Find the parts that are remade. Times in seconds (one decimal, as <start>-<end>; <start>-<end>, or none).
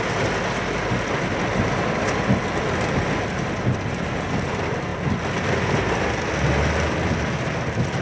none